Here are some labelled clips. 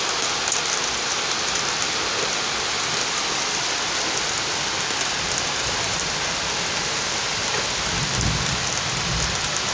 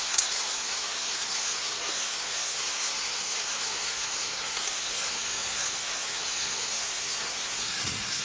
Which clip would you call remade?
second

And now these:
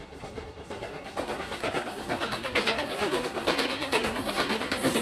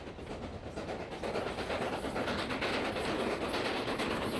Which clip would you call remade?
first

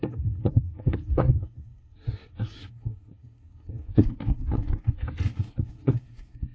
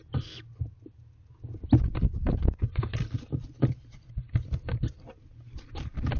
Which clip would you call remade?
first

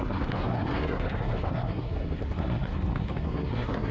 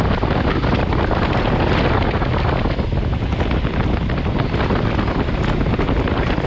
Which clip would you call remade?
first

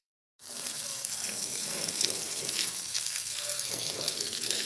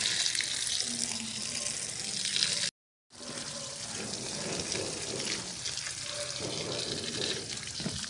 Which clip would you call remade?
first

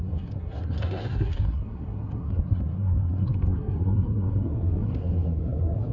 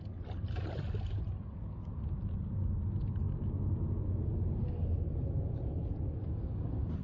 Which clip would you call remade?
first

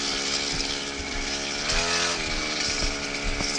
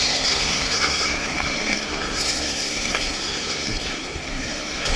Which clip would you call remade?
second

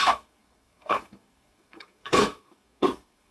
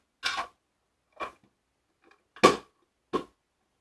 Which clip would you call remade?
first